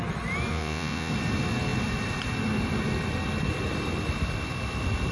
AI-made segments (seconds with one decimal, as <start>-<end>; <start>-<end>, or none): 0.5-1.1